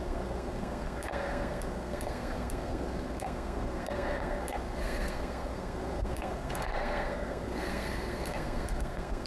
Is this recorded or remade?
remade